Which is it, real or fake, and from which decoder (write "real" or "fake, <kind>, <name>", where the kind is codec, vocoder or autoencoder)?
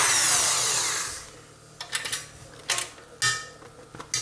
real